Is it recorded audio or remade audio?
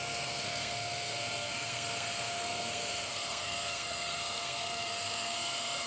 remade